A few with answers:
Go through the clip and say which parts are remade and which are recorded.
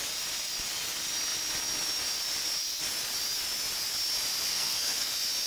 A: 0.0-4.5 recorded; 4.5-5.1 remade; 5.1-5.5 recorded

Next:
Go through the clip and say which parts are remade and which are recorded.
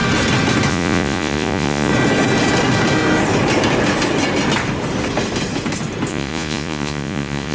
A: 0.0-0.7 recorded; 0.7-1.9 remade; 1.9-6.1 recorded; 6.1-7.5 remade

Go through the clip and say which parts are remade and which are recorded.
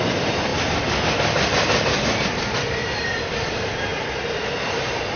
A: 0.0-3.9 remade; 3.9-5.2 recorded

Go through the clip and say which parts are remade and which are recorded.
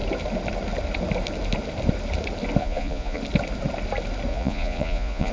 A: 0.0-2.6 recorded; 2.6-3.2 remade; 3.2-4.3 recorded; 4.3-5.3 remade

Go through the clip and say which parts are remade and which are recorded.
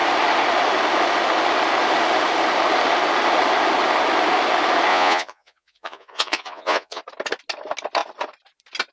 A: 0.0-4.9 recorded; 4.9-7.0 remade; 7.0-8.9 recorded